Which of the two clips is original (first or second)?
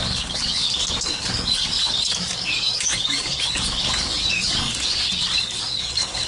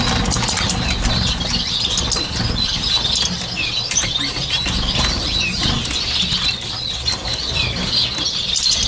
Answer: second